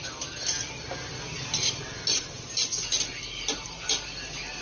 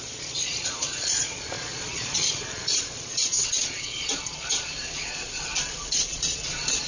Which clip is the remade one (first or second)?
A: second